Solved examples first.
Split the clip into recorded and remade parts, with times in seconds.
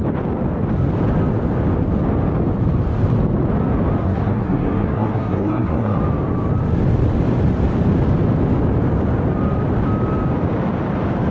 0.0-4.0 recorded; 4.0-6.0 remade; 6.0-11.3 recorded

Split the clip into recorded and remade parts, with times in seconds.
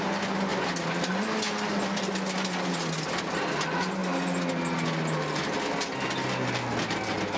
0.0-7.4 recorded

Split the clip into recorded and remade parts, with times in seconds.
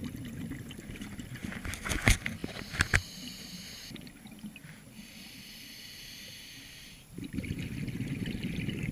0.0-8.9 recorded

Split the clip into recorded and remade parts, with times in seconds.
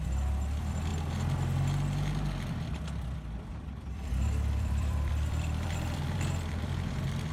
0.0-0.9 remade; 0.9-3.5 recorded; 3.5-7.3 remade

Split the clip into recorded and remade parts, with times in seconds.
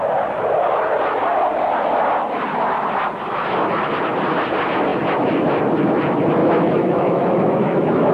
0.0-6.4 recorded; 6.4-8.1 remade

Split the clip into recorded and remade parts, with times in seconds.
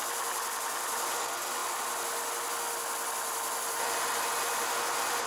0.0-5.3 recorded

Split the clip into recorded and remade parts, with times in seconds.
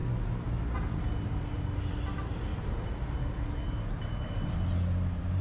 0.0-5.4 recorded